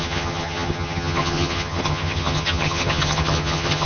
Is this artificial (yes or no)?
yes